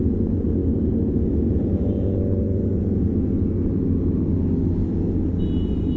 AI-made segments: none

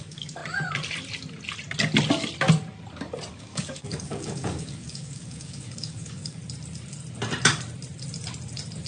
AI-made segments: 0.0-0.4 (codec, DAC); 3.3-6.4

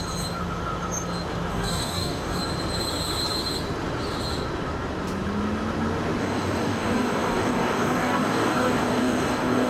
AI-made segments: 1.5-2.4 (codec, DAC); 6.2-9.7

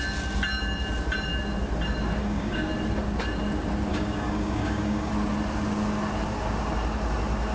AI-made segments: 2.2-2.7 (codec, DAC); 3.9-5.1

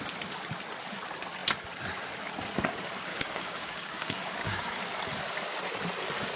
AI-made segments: 3.1-4.8 (codec, DAC)

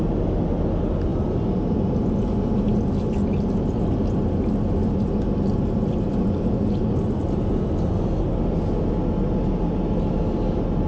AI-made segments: none

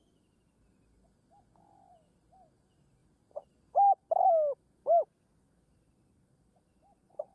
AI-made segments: 4.8-5.6 (codec, DAC)

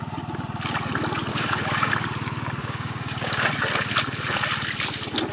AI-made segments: 1.3-1.9 (codec, DAC); 2.6-3.5